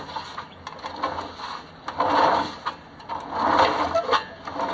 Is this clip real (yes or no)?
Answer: yes